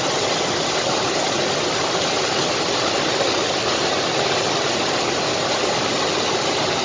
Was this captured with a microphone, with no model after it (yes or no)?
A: yes